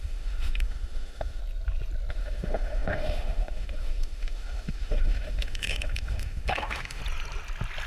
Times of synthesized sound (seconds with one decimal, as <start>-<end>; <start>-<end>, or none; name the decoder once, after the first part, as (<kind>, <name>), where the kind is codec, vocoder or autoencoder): 0.0-1.4 (autoencoder, DAC-VAE); 2.1-7.0